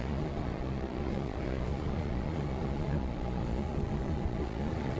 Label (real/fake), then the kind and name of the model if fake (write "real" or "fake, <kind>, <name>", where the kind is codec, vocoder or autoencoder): fake, vocoder, Vocos